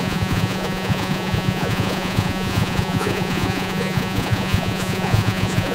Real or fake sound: fake